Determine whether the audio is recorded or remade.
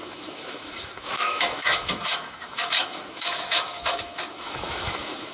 remade